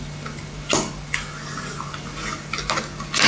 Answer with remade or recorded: recorded